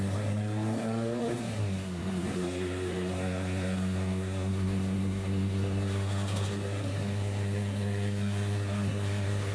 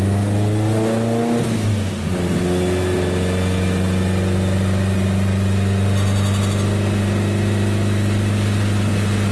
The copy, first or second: first